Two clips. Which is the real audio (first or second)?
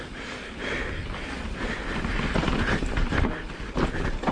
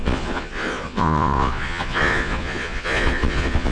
first